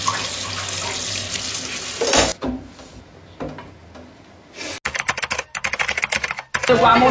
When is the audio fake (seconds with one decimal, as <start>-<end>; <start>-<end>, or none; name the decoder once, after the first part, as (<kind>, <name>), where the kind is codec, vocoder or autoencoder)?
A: 2.3-3.0 (vocoder, BigVGAN v2)